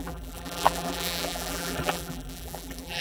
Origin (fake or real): fake